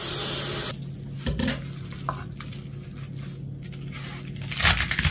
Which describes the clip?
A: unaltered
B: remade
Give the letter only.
A